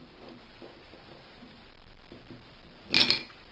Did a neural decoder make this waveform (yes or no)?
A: no